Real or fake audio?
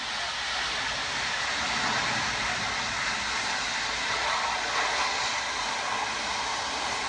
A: real